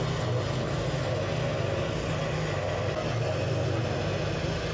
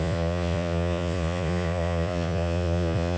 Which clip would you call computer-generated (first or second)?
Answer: second